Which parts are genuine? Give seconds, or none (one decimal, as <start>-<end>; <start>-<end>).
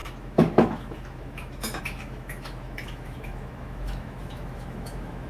none